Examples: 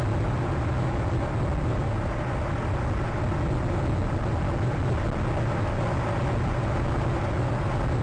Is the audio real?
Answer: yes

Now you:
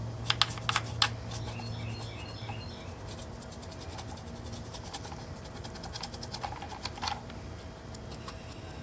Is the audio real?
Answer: yes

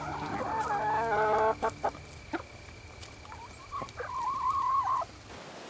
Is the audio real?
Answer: yes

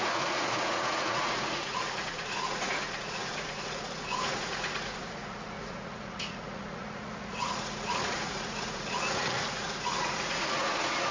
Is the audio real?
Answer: no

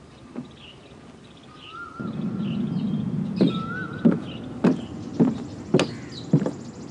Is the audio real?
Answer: yes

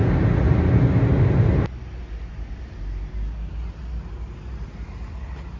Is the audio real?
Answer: yes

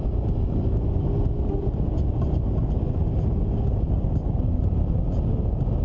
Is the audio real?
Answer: yes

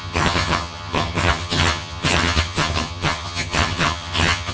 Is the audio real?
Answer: no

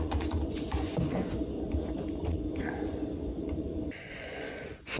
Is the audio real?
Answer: no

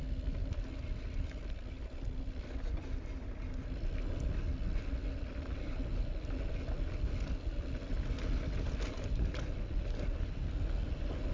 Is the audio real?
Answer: yes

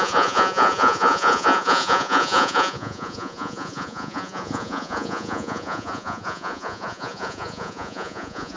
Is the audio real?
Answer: no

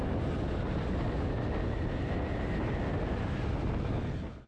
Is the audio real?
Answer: yes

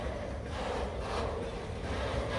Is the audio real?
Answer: yes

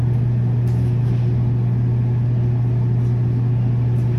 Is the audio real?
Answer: yes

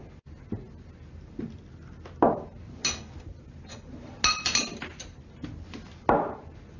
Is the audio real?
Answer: yes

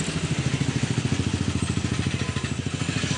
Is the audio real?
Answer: yes